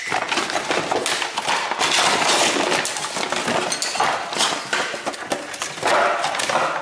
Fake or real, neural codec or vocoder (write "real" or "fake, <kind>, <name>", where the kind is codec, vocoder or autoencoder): real